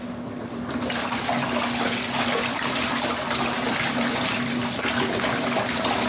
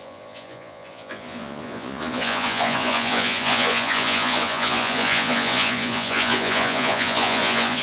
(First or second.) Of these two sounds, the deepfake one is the second